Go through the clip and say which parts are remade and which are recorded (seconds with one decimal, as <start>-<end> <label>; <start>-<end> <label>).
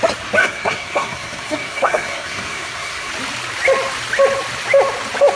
0.0-0.4 recorded; 0.4-3.1 remade; 3.1-5.4 recorded